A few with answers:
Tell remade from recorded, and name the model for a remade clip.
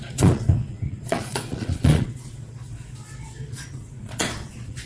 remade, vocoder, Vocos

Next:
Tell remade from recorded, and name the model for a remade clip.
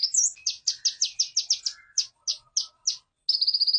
recorded